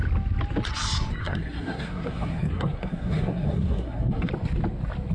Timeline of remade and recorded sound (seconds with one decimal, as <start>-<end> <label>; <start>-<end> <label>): 0.0-1.2 recorded; 1.2-4.3 remade; 4.3-5.1 recorded